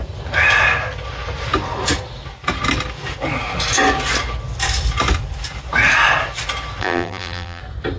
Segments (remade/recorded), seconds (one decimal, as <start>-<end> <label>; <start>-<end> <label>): 0.0-6.8 recorded; 6.8-7.6 remade; 7.6-8.0 recorded